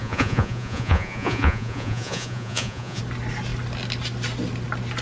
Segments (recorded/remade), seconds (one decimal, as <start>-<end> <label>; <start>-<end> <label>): 0.0-3.0 remade; 3.0-5.0 recorded